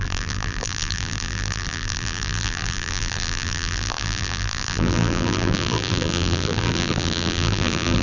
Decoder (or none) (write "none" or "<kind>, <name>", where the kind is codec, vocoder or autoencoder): vocoder, BigVGAN v2